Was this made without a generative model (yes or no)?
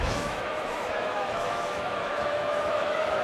no